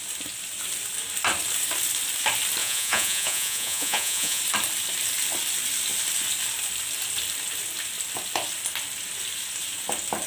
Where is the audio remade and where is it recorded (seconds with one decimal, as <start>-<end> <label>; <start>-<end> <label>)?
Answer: 0.0-2.6 recorded; 2.6-4.4 remade; 4.4-10.3 recorded